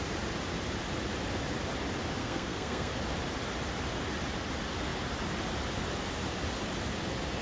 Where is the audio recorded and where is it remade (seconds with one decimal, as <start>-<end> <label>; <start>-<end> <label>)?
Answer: 0.0-2.2 recorded; 2.2-3.0 remade; 3.0-7.4 recorded

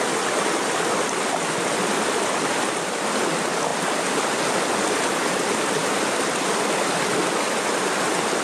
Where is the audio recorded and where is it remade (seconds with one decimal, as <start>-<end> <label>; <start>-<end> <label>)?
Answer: 0.0-8.4 recorded

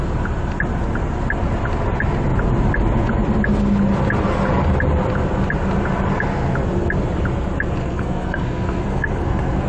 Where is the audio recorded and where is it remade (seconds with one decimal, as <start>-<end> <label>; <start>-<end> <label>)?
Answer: 0.0-7.8 recorded; 7.8-9.7 remade

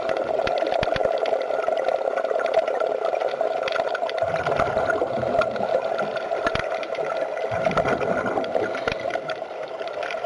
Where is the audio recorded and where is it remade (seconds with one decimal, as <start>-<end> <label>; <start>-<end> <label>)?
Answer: 0.0-10.3 recorded

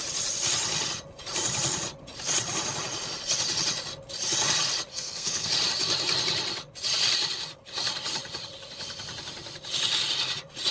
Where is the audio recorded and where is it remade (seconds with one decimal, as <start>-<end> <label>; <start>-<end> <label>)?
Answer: 0.0-4.9 recorded; 4.9-5.5 remade; 5.5-10.7 recorded

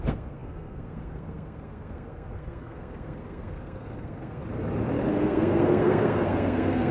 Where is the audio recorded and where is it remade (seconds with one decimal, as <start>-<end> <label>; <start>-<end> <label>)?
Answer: 0.0-4.4 remade; 4.4-5.1 recorded; 5.1-6.9 remade